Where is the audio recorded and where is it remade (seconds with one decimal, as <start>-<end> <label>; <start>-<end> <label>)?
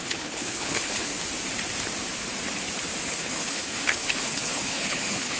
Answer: 0.0-1.1 remade; 1.1-3.1 recorded; 3.1-5.4 remade